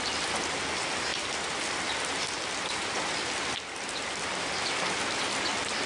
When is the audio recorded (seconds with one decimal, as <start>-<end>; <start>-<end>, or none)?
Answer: none